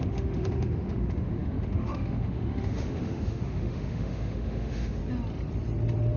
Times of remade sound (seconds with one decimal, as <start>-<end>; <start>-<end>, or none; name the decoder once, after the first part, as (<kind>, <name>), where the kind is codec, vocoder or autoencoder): 0.0-5.0 (autoencoder, DAC-VAE)